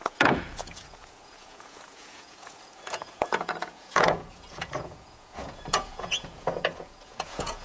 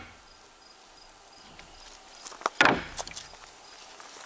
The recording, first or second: second